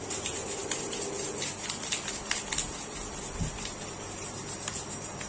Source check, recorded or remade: recorded